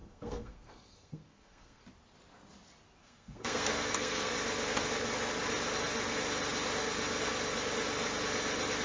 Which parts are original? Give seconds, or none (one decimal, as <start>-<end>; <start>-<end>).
1.8-3.0; 4.3-8.8